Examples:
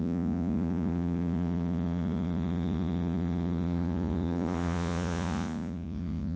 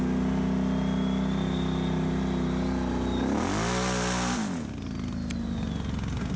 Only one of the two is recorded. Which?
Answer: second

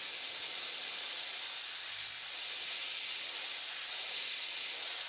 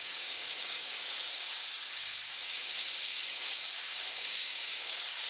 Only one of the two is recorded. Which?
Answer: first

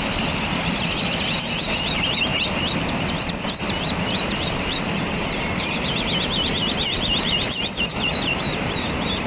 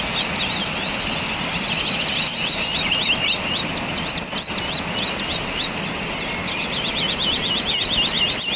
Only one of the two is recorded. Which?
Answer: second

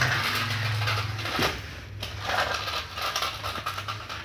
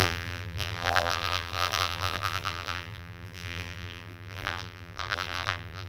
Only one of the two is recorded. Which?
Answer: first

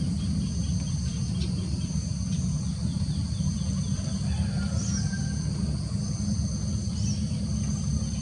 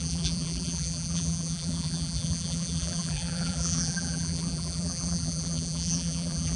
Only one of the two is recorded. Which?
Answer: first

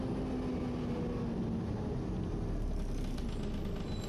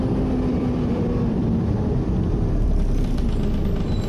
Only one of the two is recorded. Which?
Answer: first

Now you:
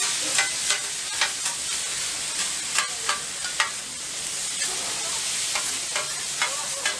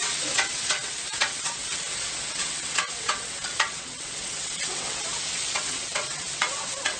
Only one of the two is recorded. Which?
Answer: first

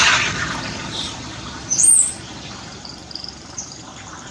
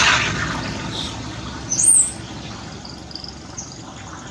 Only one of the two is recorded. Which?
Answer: second